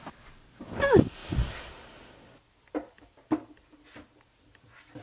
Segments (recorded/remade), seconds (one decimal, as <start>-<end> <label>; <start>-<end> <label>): 0.0-5.0 recorded